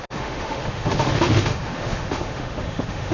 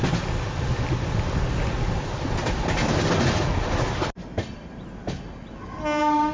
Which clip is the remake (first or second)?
first